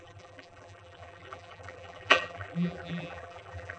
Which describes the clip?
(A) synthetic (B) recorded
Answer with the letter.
A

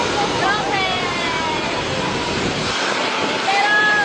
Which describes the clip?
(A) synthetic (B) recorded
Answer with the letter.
A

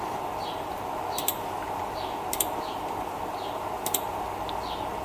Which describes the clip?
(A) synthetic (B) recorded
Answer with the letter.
B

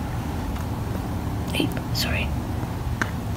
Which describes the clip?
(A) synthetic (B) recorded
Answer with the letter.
B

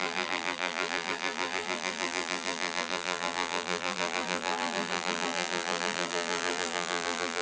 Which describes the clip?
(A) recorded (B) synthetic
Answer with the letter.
B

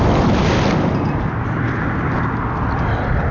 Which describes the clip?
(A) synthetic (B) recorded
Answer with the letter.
B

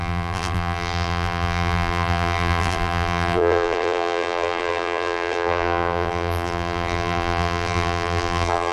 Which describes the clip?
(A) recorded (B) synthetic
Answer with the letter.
B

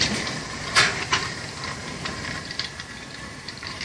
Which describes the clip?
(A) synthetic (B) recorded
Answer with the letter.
A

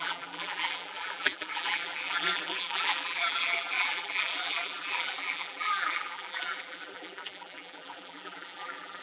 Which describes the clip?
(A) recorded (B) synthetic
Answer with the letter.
B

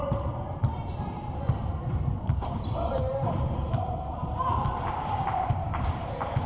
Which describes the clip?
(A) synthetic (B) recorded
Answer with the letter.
A